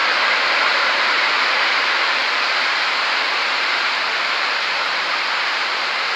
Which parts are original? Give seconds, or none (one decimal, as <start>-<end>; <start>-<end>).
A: none